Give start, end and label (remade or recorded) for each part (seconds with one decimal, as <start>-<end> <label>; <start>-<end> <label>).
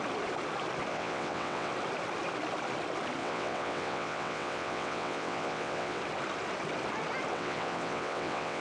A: 0.0-0.9 recorded; 0.9-1.7 remade; 1.7-3.2 recorded; 3.2-6.0 remade; 6.0-7.3 recorded; 7.3-8.6 remade